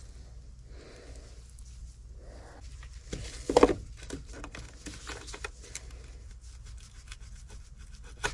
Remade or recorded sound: recorded